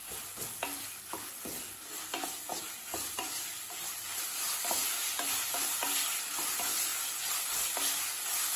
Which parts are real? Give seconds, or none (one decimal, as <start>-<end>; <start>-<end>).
0.0-2.5; 5.7-8.6